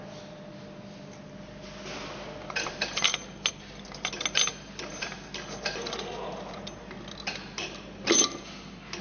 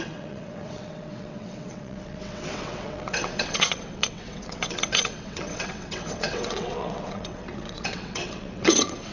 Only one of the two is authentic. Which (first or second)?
first